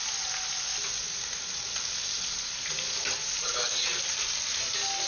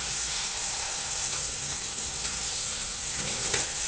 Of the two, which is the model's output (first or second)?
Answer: second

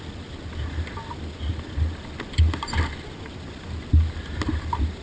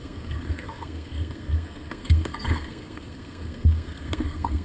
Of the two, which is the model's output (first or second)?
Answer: second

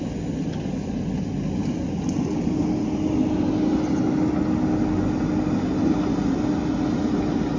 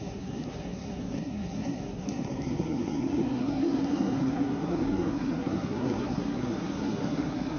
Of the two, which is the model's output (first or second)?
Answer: second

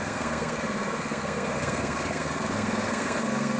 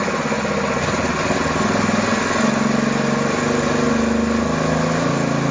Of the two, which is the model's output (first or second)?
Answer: first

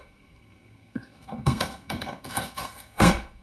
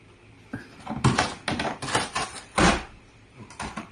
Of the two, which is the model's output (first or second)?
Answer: first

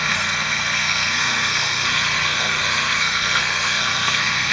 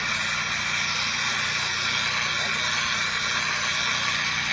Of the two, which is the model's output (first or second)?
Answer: first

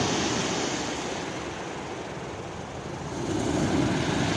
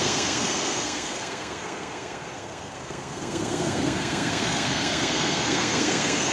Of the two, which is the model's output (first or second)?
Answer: second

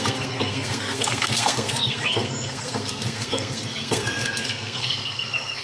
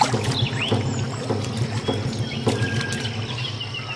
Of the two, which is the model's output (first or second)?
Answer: first